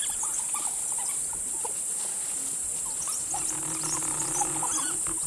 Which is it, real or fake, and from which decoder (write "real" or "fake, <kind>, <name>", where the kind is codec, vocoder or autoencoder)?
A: real